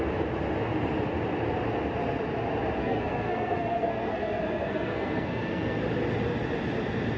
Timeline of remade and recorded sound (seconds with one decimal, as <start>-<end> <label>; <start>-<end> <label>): 0.0-2.8 recorded; 2.8-5.8 remade; 5.8-7.2 recorded